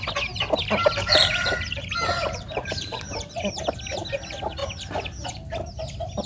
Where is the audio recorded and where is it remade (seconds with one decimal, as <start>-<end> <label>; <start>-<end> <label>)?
0.0-0.8 recorded; 0.8-3.6 remade; 3.6-6.3 recorded